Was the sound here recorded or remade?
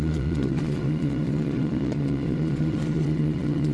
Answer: remade